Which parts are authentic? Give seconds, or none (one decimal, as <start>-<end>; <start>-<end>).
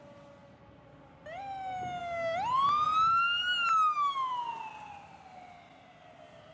0.0-6.5